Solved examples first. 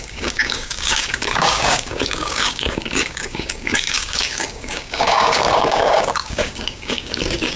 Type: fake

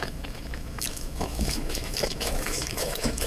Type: fake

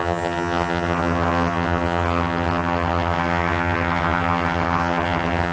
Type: fake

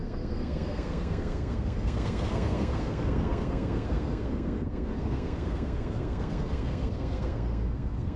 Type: fake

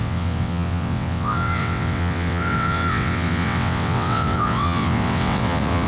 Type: fake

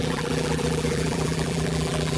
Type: fake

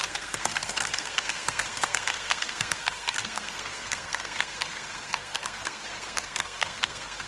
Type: fake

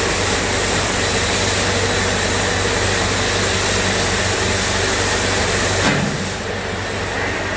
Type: real